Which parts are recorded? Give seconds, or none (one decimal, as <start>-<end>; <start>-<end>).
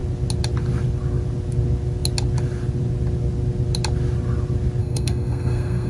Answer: 0.0-4.8